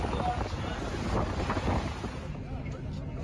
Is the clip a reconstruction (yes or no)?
no